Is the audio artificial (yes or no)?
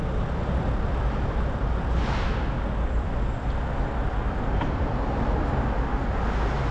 no